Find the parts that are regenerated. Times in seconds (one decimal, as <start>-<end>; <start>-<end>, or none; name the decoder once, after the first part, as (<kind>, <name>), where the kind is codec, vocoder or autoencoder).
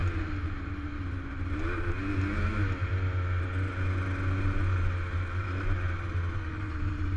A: none